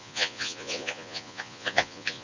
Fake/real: fake